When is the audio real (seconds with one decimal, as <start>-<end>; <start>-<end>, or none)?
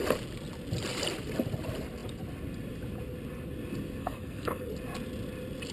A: 0.0-4.0; 4.7-5.7